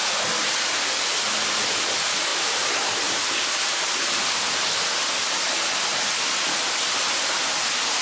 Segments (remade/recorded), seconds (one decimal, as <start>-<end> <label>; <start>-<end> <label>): 0.0-2.3 recorded; 2.3-4.2 remade; 4.2-8.0 recorded